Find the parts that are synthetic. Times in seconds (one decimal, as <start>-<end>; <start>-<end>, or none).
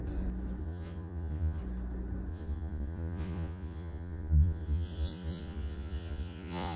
0.6-1.6; 2.3-6.8